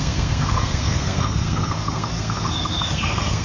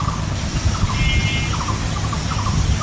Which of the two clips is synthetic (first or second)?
first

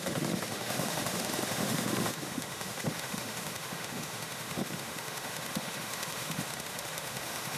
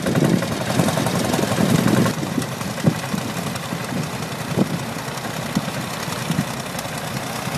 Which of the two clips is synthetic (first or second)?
first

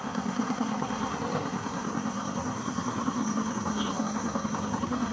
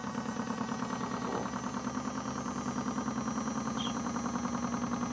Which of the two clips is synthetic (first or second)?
first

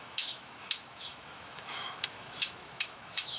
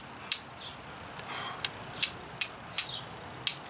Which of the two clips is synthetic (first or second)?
first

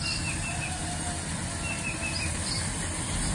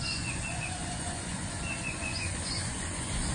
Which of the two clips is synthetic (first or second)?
second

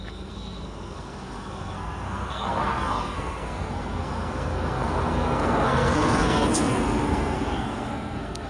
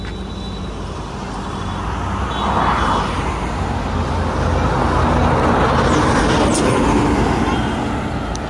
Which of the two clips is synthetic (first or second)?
first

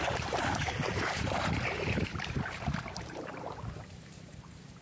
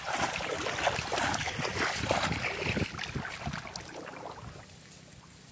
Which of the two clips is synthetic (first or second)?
first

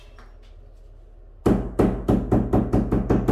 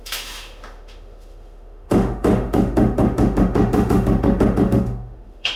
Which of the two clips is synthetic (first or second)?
second